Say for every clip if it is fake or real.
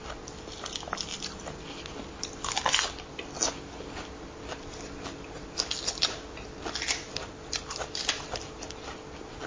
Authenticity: real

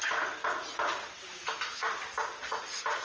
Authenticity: real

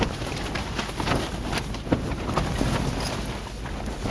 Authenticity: real